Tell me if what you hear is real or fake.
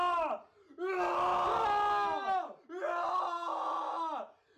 real